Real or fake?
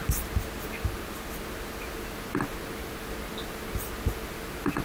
real